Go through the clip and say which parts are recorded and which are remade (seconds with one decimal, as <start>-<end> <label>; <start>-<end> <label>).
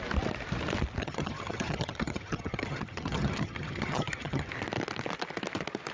0.0-1.0 recorded; 1.0-4.5 remade; 4.5-5.9 recorded